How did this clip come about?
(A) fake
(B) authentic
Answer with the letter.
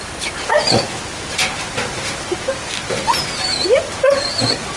B